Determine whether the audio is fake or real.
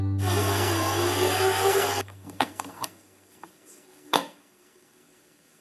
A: fake